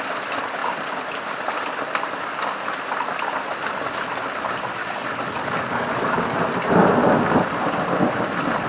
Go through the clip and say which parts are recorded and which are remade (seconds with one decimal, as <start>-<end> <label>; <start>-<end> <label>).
0.0-4.8 recorded; 4.8-6.4 remade; 6.4-8.7 recorded